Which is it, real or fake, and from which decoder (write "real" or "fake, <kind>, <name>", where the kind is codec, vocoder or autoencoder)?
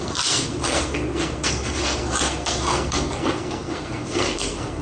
fake, codec, SNAC